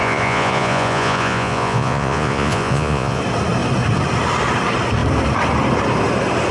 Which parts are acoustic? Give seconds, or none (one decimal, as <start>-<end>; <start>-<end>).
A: 3.2-6.5